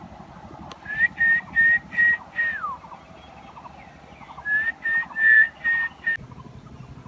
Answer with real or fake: real